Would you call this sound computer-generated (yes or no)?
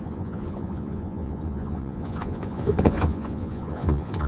yes